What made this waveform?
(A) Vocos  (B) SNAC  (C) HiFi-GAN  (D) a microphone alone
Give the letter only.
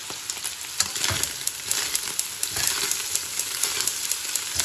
D